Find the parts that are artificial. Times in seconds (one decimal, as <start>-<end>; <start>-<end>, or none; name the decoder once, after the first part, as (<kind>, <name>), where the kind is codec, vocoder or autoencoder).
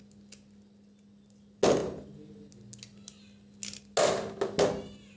none